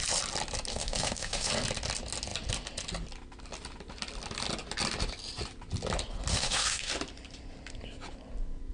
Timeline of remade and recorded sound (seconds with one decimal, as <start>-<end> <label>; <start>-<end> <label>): 0.0-0.7 recorded; 0.7-1.5 remade; 1.5-6.3 recorded; 6.3-6.9 remade; 6.9-8.7 recorded